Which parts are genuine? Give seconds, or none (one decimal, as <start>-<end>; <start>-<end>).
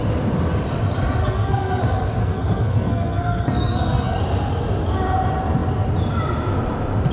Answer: 0.0-1.2; 1.8-2.2; 4.2-7.1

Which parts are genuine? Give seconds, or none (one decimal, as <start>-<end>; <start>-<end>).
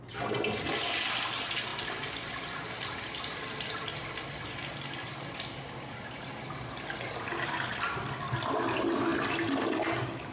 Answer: 0.0-10.3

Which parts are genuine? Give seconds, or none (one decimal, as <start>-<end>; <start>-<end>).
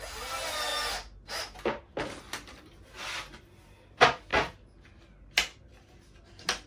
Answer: 0.0-6.7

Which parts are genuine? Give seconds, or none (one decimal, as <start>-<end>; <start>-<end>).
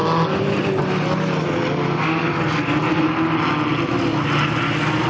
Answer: 0.0-5.1